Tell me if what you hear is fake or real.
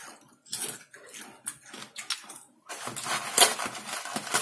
real